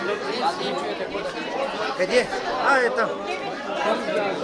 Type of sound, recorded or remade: recorded